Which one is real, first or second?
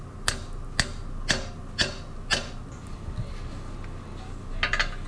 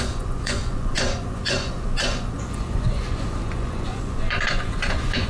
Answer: first